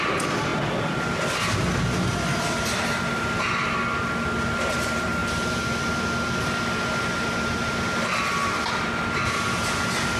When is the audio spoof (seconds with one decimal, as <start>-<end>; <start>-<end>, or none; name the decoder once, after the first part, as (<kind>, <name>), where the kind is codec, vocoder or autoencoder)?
none